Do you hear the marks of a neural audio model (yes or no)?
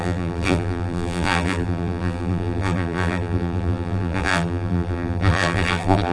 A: yes